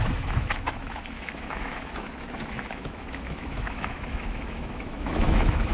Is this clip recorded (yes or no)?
no